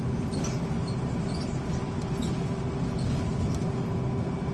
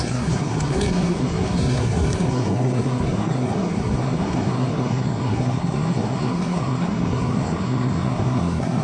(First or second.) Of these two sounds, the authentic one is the first